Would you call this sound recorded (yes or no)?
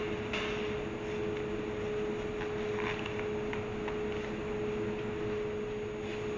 yes